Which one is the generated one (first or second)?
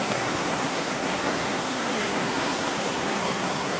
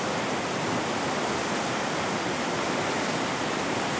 first